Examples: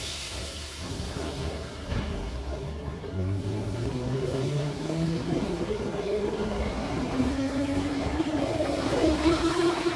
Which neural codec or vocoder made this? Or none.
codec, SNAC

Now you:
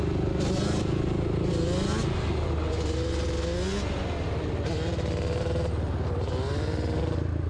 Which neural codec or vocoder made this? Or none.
none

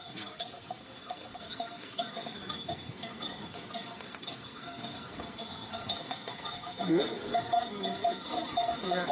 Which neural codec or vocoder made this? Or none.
codec, SNAC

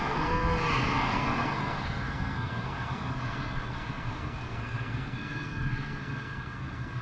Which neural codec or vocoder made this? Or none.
codec, SNAC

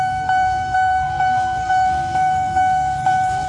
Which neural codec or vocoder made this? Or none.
codec, SNAC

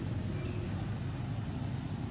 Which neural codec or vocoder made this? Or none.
none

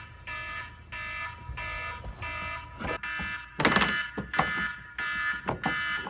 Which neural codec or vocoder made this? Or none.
none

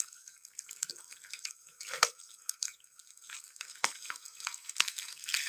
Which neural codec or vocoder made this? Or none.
codec, SNAC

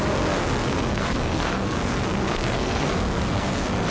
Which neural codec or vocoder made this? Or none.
codec, SNAC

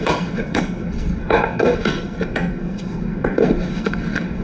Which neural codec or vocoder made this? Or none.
codec, SNAC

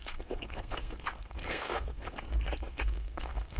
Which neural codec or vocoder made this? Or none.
codec, SNAC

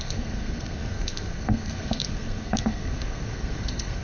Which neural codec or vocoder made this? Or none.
codec, SNAC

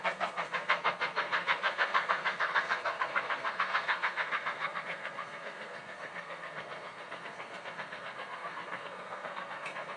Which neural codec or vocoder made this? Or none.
codec, SNAC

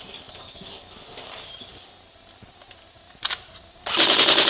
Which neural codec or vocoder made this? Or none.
none